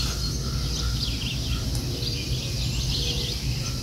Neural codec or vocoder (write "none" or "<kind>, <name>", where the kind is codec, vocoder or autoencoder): none